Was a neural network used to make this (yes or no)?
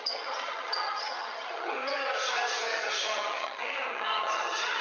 yes